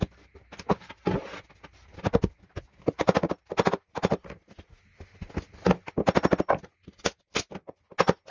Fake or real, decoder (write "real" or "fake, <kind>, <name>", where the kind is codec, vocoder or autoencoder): real